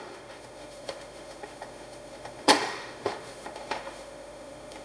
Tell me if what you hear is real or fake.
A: fake